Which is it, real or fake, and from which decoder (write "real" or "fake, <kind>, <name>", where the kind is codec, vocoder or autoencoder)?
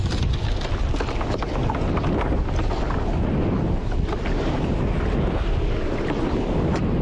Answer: real